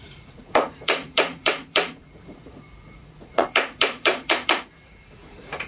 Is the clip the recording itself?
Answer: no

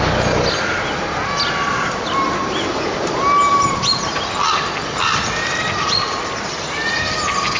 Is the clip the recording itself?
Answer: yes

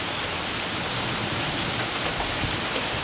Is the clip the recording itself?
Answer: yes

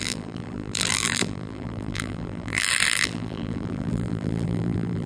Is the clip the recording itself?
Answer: no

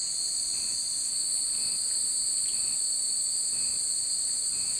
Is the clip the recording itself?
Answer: yes